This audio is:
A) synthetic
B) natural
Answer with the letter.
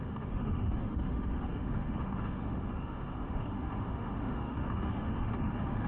A